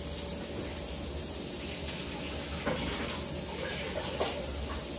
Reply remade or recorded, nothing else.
recorded